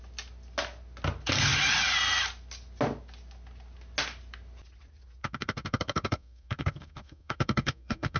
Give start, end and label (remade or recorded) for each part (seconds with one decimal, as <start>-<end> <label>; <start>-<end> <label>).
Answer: 0.0-5.2 recorded; 5.2-8.2 remade